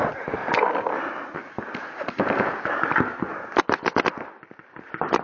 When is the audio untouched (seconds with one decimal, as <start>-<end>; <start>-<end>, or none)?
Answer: 0.0-5.2